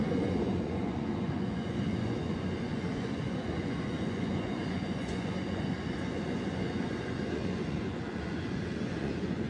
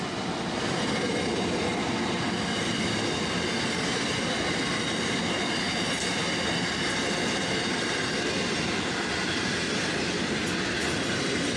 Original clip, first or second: second